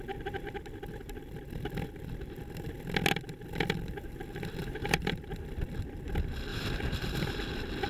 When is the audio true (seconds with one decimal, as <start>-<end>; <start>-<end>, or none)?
0.0-4.6; 5.2-6.5; 7.3-7.9